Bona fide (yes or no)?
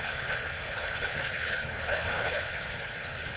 no